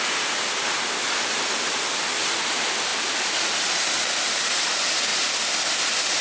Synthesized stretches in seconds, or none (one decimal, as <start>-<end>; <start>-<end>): none